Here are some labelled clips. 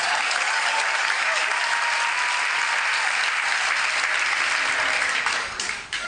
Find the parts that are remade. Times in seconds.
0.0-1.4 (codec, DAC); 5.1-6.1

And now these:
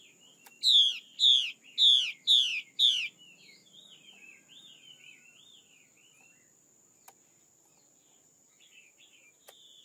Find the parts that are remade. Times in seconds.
none

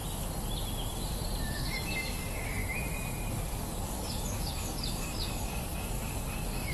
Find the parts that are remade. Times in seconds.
1.5-2.6 (codec, DAC); 3.3-6.7

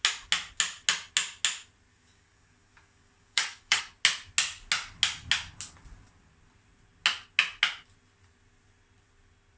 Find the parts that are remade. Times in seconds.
1.9-3.8 (codec, DAC)